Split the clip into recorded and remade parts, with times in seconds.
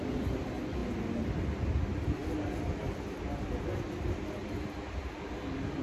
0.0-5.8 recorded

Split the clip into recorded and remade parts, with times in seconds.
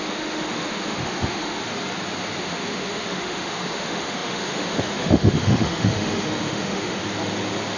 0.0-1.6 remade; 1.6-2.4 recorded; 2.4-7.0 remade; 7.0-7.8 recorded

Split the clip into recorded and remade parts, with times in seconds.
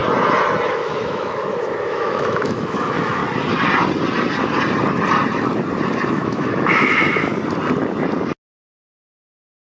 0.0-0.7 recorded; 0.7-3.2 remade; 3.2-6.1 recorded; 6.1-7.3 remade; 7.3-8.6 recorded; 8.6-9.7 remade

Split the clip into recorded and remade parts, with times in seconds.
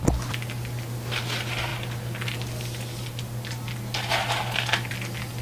0.0-5.4 recorded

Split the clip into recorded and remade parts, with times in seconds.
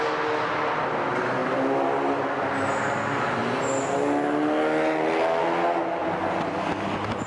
0.0-7.3 recorded